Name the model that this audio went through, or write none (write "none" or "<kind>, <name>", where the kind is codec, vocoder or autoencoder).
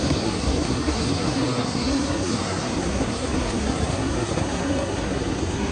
codec, SNAC